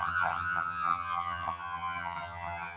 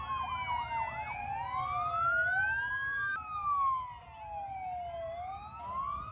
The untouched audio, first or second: second